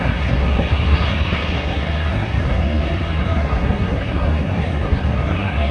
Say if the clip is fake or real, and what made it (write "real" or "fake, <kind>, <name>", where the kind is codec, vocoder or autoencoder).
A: fake, codec, SNAC